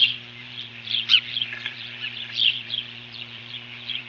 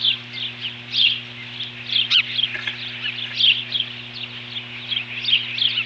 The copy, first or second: first